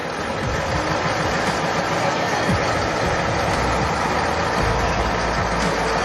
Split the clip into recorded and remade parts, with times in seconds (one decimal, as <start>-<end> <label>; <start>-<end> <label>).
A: 0.0-2.0 recorded; 2.0-2.5 remade; 2.5-6.0 recorded